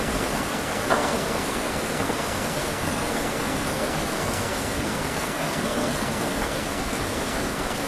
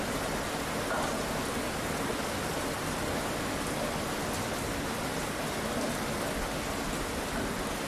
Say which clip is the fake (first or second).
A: first